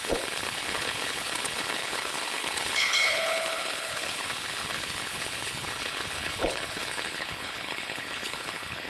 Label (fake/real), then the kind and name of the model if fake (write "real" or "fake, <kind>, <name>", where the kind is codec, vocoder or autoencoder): fake, codec, HILCodec